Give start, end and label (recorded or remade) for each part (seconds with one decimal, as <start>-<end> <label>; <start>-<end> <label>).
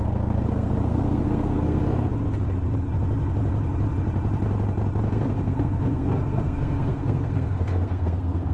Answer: 0.0-2.1 remade; 2.1-5.1 recorded; 5.1-8.5 remade